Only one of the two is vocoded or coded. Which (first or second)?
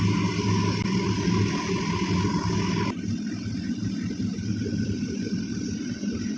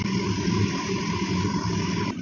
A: second